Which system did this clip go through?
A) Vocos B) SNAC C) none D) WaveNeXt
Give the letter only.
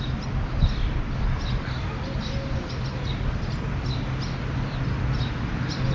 C